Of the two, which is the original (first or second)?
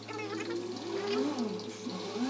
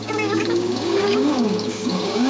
first